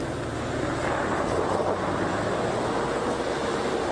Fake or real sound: real